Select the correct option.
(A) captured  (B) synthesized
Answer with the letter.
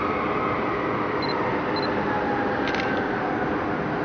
A